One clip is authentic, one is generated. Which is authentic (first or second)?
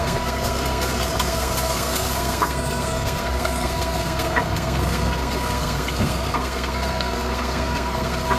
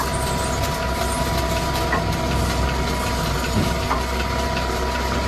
second